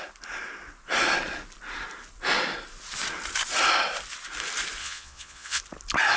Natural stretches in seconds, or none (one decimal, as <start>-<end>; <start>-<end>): 0.0-4.8; 5.6-6.2